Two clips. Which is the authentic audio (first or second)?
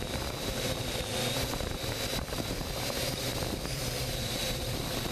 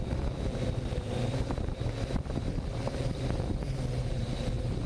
second